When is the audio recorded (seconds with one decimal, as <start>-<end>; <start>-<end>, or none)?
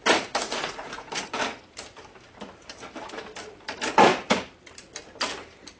0.0-0.4; 1.1-5.8